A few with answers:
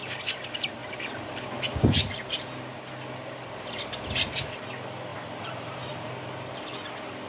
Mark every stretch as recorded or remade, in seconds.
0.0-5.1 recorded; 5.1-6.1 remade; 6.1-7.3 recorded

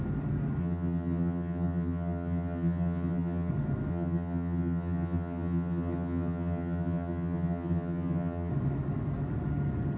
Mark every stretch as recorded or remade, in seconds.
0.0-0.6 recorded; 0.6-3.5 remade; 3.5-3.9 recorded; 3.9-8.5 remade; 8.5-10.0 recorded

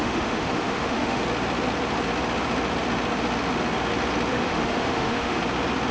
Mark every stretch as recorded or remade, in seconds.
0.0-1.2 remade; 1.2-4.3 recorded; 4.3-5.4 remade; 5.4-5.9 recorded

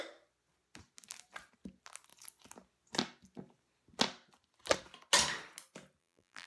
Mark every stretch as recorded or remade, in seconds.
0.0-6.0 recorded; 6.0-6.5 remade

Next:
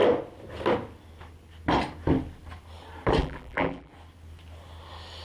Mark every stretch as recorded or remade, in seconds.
0.0-3.2 recorded; 3.2-3.9 remade; 3.9-5.2 recorded